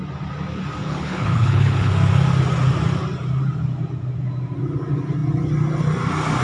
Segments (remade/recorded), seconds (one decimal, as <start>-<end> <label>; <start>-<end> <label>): 0.0-0.8 recorded; 0.8-1.9 remade; 1.9-6.4 recorded